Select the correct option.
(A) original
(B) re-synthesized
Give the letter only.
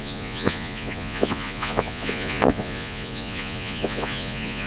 B